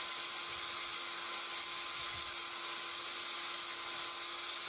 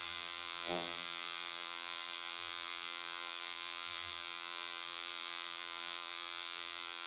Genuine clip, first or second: first